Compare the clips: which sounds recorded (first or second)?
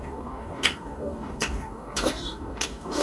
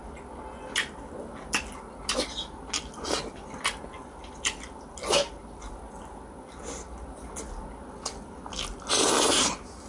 second